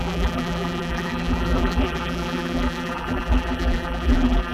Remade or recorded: remade